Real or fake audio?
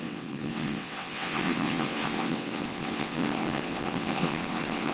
fake